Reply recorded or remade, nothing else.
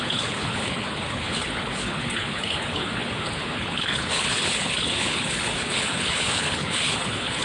remade